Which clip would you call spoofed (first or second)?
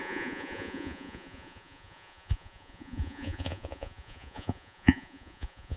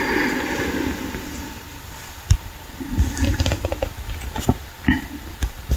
first